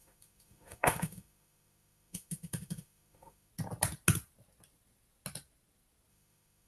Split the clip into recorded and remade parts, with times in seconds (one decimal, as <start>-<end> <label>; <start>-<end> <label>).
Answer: 0.0-3.5 remade; 3.5-6.1 recorded; 6.1-6.7 remade